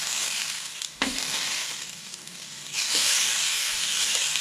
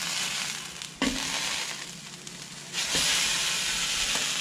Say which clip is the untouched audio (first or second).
second